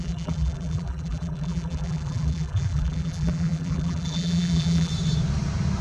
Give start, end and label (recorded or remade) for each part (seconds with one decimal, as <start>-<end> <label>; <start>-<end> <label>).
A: 0.0-4.9 remade; 4.9-5.8 recorded